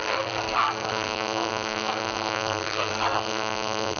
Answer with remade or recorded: remade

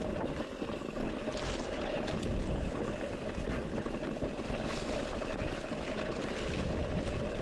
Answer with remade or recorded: recorded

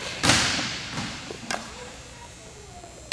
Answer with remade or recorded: remade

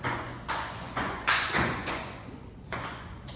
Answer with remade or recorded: remade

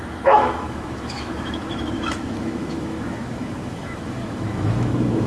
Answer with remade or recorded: remade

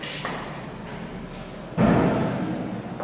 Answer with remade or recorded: recorded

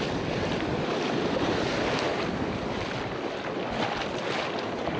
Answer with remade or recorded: recorded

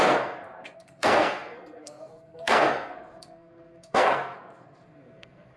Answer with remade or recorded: remade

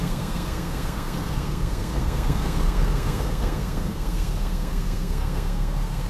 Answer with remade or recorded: remade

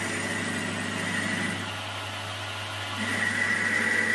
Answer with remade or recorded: recorded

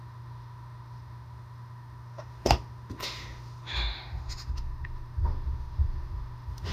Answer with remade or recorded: remade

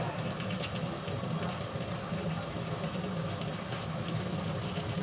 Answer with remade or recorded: recorded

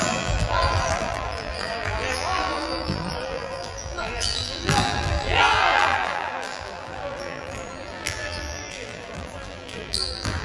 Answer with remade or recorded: remade